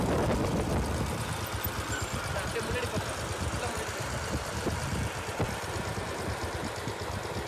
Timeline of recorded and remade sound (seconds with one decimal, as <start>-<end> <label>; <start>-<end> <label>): 0.0-7.5 recorded